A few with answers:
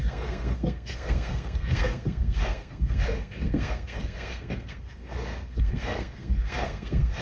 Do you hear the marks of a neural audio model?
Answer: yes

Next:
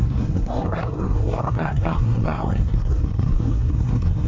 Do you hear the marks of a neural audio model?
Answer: yes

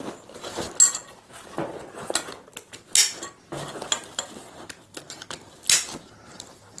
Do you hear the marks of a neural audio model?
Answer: no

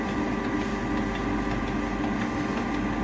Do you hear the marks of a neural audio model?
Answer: no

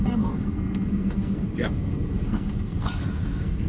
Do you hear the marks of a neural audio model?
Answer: yes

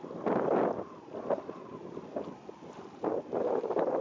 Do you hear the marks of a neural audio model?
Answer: no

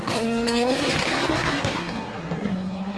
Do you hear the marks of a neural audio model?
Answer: yes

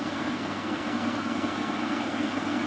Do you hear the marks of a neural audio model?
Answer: yes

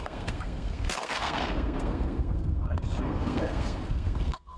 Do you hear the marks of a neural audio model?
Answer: yes